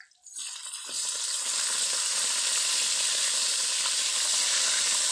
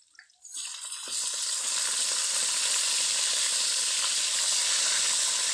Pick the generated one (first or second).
second